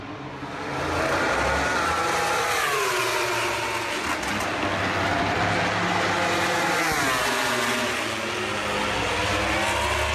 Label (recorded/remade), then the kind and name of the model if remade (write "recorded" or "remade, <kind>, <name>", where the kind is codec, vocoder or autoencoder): recorded